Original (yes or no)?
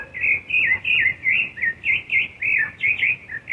no